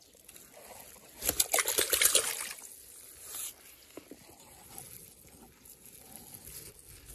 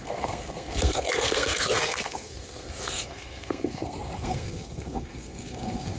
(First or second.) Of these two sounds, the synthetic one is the second